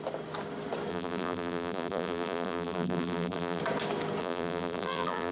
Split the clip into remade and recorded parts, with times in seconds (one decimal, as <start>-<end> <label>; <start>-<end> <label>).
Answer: 0.0-0.9 recorded; 0.9-3.6 remade; 3.6-4.2 recorded; 4.2-5.3 remade